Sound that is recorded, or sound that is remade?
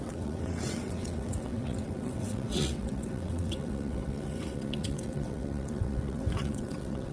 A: remade